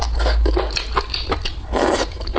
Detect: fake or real real